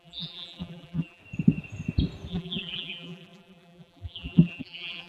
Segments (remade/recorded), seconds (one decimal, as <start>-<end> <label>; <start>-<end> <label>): 0.0-1.2 remade; 1.2-2.3 recorded; 2.3-5.1 remade